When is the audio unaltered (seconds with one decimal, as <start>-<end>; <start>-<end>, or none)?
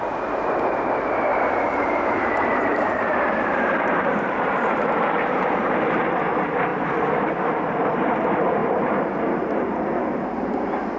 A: 0.0-1.3; 6.1-8.6; 9.1-11.0